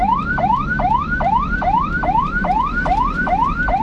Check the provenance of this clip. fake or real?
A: fake